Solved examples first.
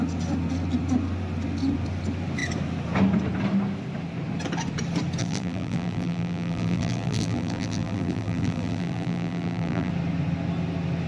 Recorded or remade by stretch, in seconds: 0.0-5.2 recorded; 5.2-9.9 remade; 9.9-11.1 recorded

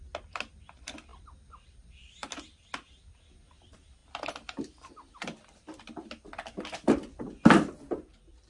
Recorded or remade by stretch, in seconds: 0.0-8.5 recorded

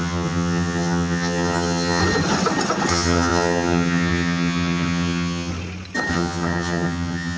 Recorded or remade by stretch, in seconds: 0.0-2.0 remade; 2.0-2.9 recorded; 2.9-5.5 remade; 5.5-6.1 recorded; 6.1-7.4 remade

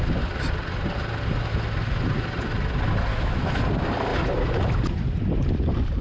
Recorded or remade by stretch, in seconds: 0.0-3.1 recorded; 3.1-3.6 remade; 3.6-6.0 recorded

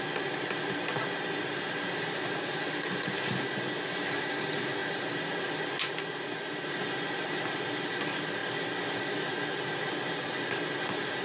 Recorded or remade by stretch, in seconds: 0.0-11.2 recorded

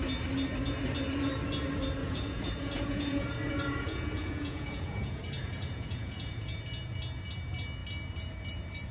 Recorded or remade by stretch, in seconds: 0.0-2.0 recorded; 2.0-6.6 remade; 6.6-8.9 recorded

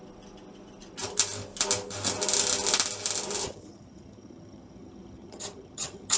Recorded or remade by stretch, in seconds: 0.0-3.4 recorded; 3.4-6.2 remade